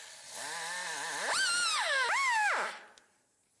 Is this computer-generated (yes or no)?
no